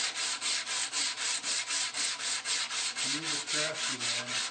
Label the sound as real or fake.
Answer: real